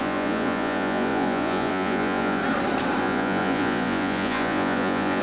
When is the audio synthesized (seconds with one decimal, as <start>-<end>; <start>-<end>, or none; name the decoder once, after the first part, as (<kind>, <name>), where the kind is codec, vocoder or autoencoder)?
0.0-2.4 (vocoder, Vocos); 3.0-5.2